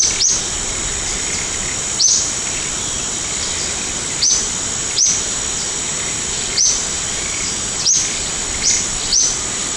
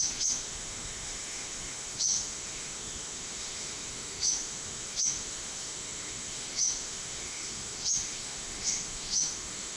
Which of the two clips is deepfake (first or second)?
second